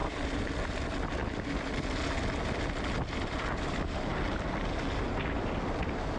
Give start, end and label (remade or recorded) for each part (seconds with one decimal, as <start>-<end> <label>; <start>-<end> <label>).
0.0-6.2 recorded